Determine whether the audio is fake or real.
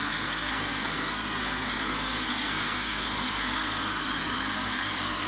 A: fake